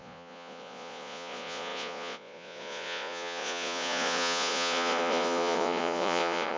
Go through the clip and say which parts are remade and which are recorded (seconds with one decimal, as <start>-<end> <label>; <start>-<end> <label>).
0.0-6.6 remade